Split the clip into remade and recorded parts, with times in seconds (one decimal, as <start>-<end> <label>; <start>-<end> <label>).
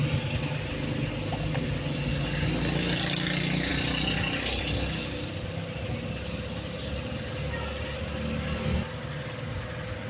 0.0-10.1 recorded